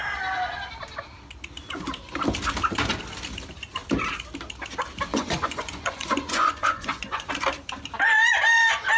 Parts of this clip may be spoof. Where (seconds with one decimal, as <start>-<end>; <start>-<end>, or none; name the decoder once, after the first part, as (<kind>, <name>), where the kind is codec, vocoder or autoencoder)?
5.1-7.3 (vocoder, Vocos)